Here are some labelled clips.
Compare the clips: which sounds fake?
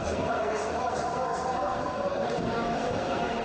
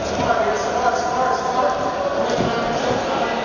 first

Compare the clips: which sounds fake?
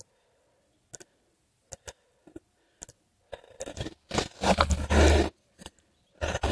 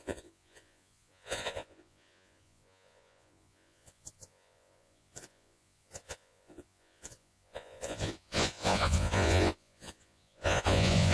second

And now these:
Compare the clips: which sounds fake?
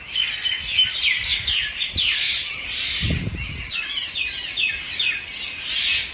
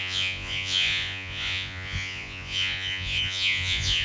second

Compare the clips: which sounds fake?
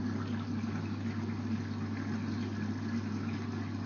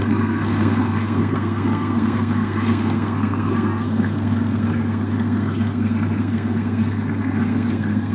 second